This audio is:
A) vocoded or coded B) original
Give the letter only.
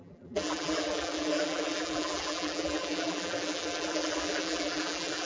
A